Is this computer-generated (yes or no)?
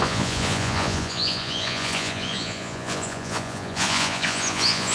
yes